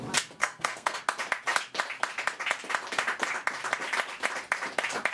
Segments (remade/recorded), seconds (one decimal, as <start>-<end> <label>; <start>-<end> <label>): 0.0-0.4 recorded; 0.4-1.0 remade; 1.0-5.1 recorded